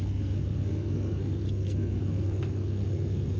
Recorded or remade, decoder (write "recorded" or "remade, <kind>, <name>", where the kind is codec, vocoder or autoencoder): remade, codec, SNAC